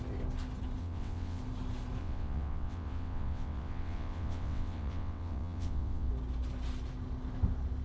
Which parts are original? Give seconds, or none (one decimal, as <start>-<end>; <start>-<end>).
0.0-0.8; 1.4-2.0; 6.1-7.8